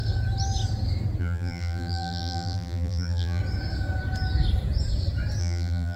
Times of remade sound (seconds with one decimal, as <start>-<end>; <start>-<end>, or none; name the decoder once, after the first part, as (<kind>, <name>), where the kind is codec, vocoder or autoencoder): 1.2-3.4 (vocoder, BigVGAN v2); 5.4-6.0